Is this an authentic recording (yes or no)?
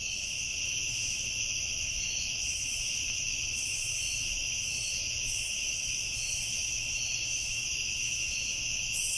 no